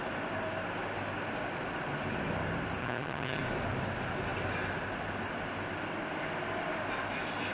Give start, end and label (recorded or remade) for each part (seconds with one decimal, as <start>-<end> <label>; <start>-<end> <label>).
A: 0.0-2.8 recorded; 2.8-3.4 remade; 3.4-7.5 recorded